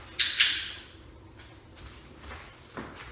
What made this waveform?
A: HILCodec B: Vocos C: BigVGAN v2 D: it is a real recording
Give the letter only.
D